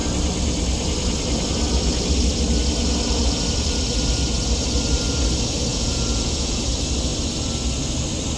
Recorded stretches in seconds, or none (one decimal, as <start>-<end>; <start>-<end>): 0.0-5.7; 6.6-8.4